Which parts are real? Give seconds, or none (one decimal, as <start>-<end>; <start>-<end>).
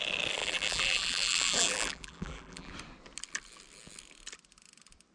0.0-0.4; 2.7-5.1